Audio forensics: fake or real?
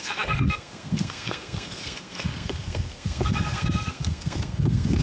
fake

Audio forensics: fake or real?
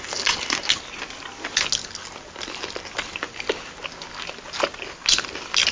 real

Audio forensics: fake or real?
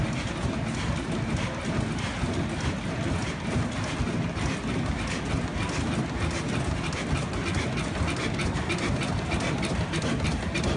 real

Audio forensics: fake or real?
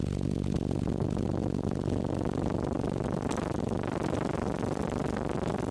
real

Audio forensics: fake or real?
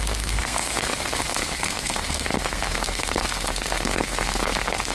fake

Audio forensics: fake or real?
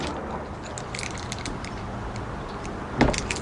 real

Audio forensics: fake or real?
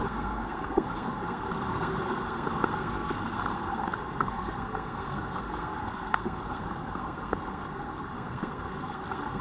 fake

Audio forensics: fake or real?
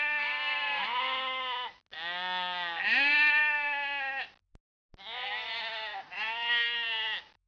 real